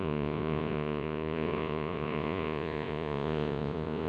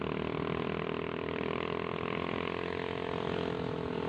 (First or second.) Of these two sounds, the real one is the second